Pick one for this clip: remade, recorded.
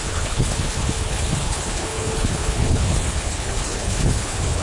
remade